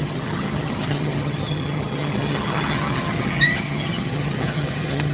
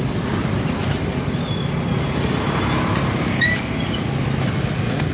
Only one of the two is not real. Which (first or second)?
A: first